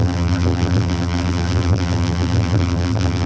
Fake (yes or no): yes